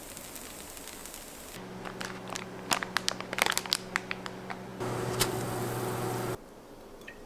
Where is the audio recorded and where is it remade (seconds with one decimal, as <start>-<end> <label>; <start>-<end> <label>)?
0.0-7.3 recorded